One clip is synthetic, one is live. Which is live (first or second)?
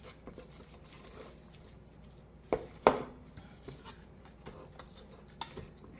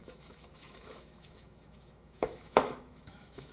first